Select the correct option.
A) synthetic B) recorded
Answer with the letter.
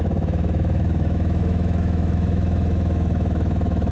A